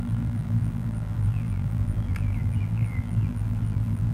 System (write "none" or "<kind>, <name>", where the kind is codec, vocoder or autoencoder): vocoder, BigVGAN v2